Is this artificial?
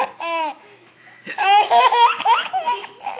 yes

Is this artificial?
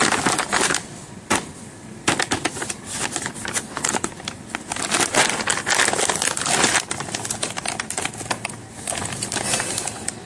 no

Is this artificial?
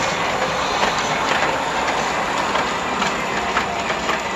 no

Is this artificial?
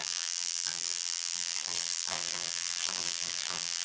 yes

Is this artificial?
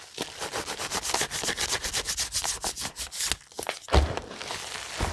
no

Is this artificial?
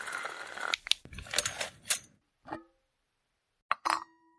no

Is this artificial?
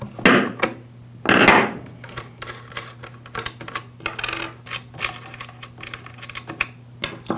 no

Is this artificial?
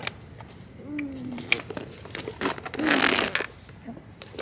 no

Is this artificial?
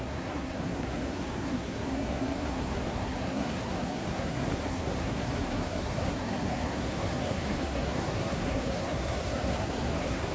yes